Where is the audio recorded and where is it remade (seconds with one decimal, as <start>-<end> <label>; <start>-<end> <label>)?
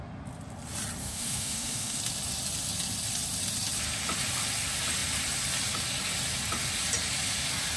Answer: 0.0-1.0 recorded; 1.0-2.0 remade; 2.0-7.8 recorded